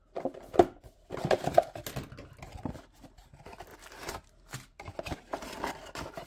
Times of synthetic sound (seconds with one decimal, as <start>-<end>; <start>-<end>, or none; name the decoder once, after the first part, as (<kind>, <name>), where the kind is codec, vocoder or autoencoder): none